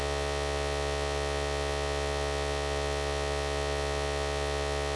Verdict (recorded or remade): recorded